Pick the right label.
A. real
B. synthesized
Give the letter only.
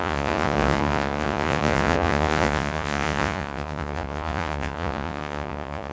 B